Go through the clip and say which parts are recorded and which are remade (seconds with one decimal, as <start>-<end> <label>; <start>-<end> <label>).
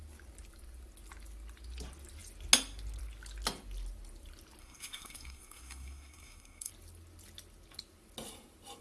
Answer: 0.0-4.6 recorded; 4.6-6.7 remade; 6.7-8.8 recorded